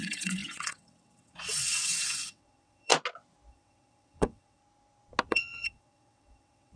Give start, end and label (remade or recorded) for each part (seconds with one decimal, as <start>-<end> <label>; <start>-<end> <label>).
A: 0.0-2.9 remade; 2.9-3.5 recorded; 3.5-4.6 remade; 4.6-5.3 recorded; 5.3-6.8 remade